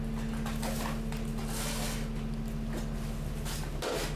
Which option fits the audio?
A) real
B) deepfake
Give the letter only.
A